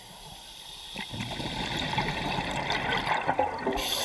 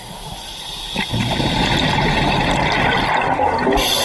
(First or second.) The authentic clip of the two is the second